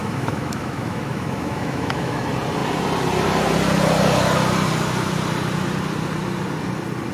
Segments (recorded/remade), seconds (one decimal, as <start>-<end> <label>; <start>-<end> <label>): 0.0-2.2 remade; 2.2-7.1 recorded